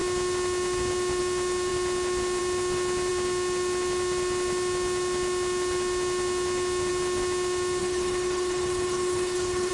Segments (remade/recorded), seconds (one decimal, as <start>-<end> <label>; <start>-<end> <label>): 0.0-7.8 recorded; 7.8-9.7 remade